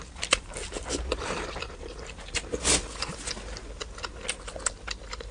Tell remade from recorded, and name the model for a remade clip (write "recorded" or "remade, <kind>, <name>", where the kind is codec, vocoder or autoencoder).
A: recorded